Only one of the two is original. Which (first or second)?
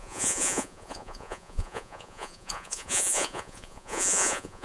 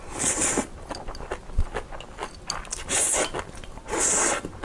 second